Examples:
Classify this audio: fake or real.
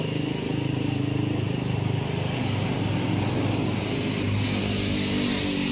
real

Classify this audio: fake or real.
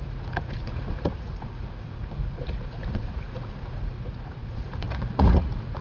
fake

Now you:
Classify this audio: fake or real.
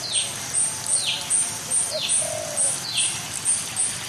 real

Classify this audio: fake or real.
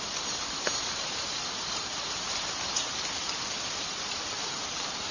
real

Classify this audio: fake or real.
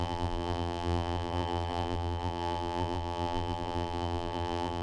fake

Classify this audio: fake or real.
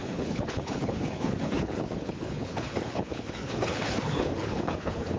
fake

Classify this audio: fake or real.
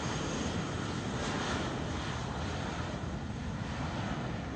real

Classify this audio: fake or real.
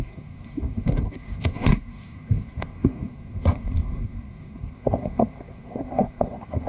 fake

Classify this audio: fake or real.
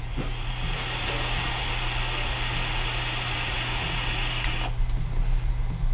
real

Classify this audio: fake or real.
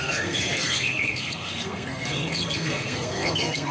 fake